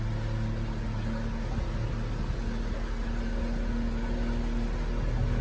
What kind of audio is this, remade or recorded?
recorded